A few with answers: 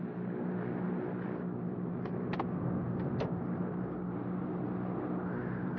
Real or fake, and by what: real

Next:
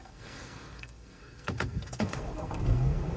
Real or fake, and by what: fake, codec, SNAC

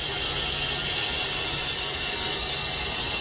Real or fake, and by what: real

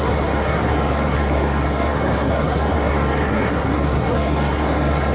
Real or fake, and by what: fake, codec, SNAC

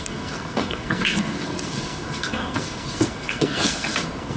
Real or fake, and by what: fake, codec, SNAC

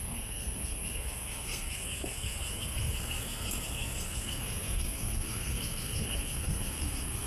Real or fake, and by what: fake, codec, SNAC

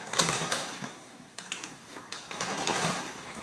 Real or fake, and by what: fake, codec, SNAC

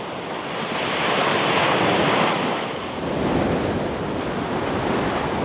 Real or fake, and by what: real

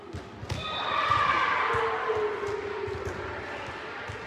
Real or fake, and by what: real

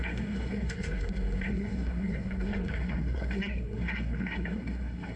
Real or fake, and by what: fake, codec, SNAC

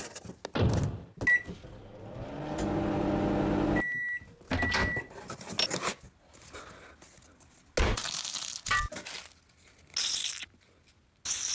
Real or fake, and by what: real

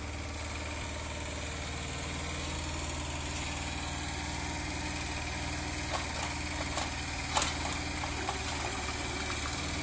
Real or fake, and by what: real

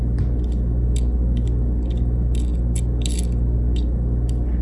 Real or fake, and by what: real